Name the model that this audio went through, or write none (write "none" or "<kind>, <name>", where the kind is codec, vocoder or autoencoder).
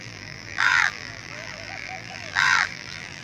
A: vocoder, BigVGAN v2